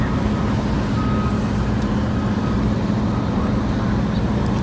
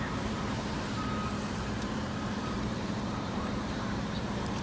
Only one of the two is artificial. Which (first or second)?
second